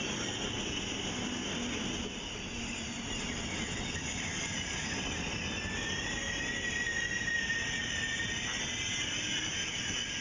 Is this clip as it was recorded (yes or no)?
yes